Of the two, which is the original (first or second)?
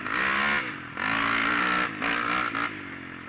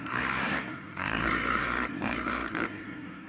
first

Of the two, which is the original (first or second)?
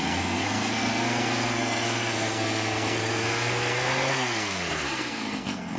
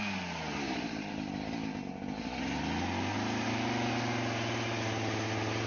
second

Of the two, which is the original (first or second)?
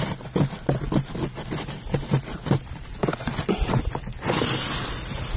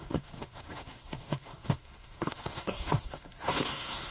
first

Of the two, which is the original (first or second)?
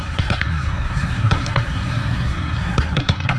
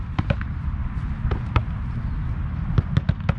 second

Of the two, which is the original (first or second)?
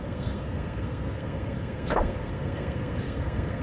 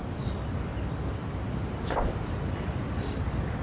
second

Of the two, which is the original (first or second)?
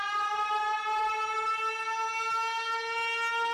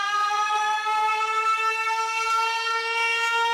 first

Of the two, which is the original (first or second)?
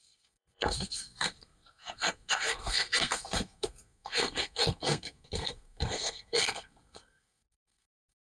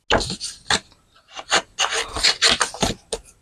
second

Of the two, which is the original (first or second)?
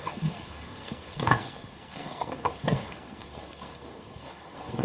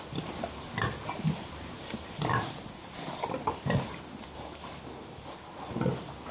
second